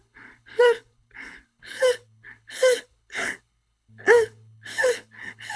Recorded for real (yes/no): no